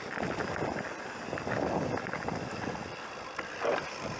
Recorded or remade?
recorded